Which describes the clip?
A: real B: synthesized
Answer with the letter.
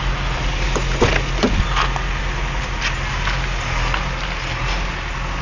A